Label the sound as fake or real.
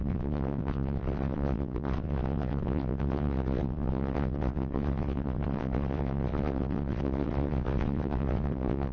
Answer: fake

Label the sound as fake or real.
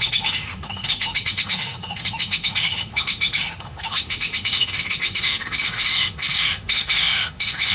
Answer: fake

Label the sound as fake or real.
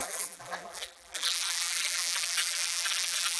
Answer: fake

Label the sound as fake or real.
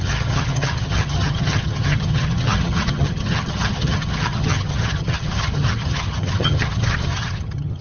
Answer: fake